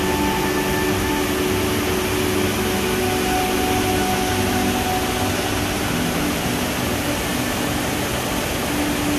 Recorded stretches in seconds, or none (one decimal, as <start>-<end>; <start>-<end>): 0.0-9.2